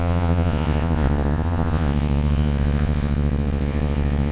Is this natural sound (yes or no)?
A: no